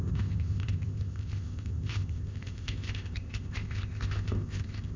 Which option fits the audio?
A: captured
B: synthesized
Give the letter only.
B